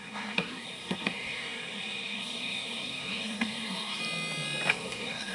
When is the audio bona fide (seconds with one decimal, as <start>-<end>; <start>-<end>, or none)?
4.0-4.7